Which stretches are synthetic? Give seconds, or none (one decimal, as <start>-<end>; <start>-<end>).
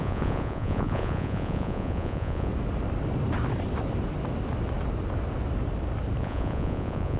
0.0-2.5; 6.2-7.2